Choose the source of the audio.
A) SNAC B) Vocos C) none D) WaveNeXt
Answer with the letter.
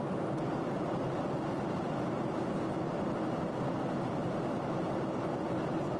C